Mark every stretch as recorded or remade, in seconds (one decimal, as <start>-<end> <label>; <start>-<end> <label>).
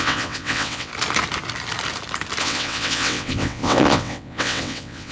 0.0-0.9 remade; 0.9-2.4 recorded; 2.4-5.1 remade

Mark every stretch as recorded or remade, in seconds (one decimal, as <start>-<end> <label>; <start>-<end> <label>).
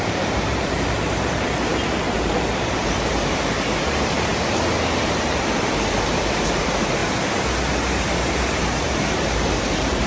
0.0-4.3 remade; 4.3-5.6 recorded; 5.6-7.0 remade; 7.0-8.6 recorded; 8.6-10.1 remade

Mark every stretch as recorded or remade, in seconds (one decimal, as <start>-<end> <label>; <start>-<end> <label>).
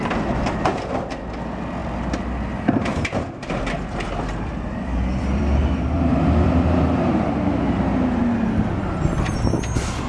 0.0-1.8 recorded; 1.8-6.8 remade; 6.8-10.1 recorded